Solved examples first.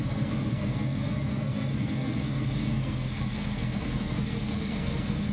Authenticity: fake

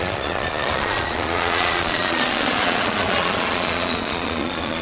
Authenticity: fake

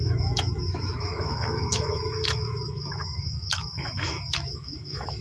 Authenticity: fake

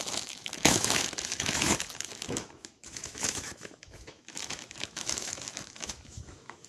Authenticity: fake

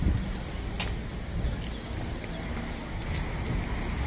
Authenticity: real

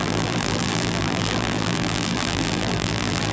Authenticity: fake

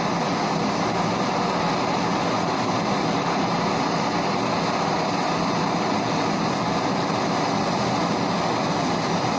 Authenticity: real